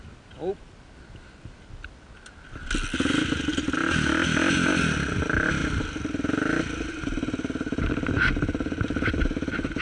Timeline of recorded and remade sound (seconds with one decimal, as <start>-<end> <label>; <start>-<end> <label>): 0.0-5.6 recorded; 5.6-7.9 remade; 7.9-9.8 recorded